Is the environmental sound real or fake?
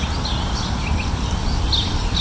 real